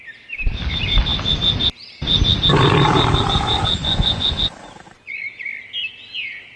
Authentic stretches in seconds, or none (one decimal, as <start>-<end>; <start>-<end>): 0.0-3.8; 5.2-6.6